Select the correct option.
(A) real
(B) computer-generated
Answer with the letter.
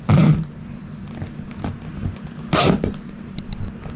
A